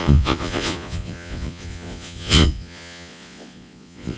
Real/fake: fake